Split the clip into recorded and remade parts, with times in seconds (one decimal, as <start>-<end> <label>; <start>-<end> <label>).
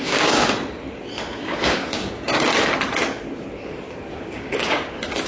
0.0-0.4 remade; 0.4-1.4 recorded; 1.4-2.5 remade; 2.5-4.1 recorded; 4.1-5.3 remade